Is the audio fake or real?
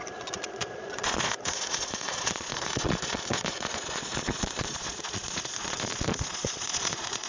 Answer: fake